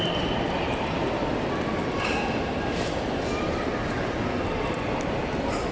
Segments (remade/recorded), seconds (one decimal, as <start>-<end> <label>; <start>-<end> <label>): 0.0-5.7 recorded